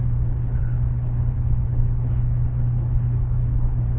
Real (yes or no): no